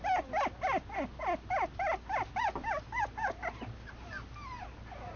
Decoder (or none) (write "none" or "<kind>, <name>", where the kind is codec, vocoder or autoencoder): none